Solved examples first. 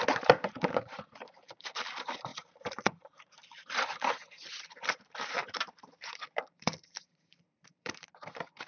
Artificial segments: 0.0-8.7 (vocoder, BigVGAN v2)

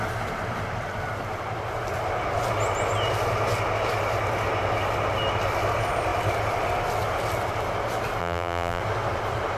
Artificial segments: 8.2-8.8 (vocoder, BigVGAN v2)

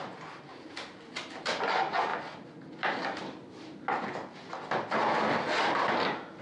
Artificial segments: 0.5-1.6 (vocoder, BigVGAN v2)

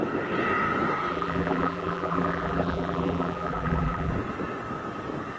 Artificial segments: 1.1-4.1 (vocoder, BigVGAN v2)

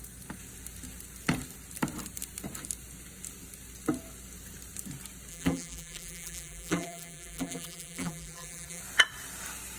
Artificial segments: 5.3-8.8 (vocoder, BigVGAN v2)

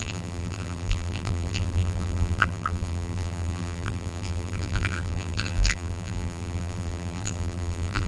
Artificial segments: 0.0-8.1 (vocoder, BigVGAN v2)

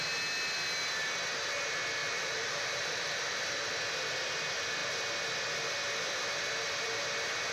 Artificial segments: 2.0-3.7 (vocoder, BigVGAN v2)